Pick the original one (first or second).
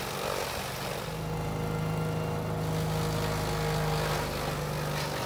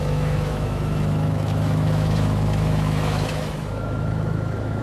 first